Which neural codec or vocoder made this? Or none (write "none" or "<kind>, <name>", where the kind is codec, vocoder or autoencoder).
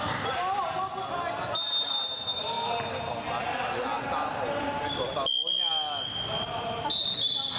none